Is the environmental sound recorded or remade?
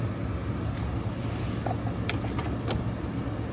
recorded